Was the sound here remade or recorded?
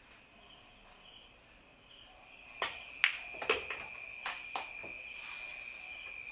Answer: recorded